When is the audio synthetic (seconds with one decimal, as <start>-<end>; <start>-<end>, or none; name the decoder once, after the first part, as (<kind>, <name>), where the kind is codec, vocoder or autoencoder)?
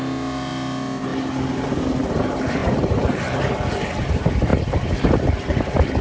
none